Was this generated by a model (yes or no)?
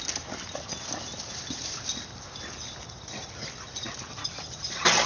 no